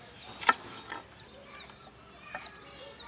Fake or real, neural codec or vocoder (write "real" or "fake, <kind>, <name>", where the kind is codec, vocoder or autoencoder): real